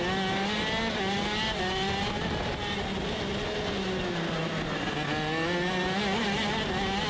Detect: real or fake real